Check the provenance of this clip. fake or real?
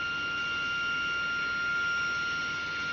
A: real